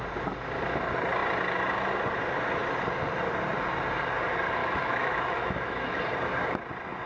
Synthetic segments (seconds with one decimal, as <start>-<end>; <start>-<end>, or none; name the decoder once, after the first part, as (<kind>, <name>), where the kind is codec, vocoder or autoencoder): 4.6-6.0 (autoencoder, DAC-VAE)